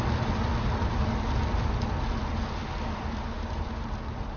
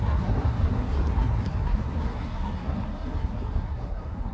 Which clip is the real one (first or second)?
first